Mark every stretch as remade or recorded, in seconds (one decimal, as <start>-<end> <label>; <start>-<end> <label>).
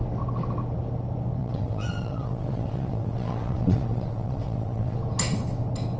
0.0-1.4 recorded; 1.4-5.0 remade; 5.0-6.0 recorded